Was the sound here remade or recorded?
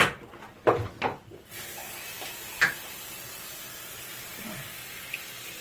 recorded